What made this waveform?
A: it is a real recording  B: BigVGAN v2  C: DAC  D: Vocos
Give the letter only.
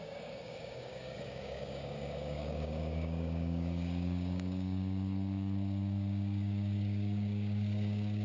C